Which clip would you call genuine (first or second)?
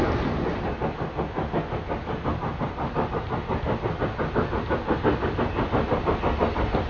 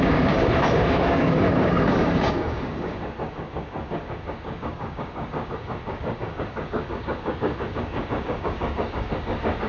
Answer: first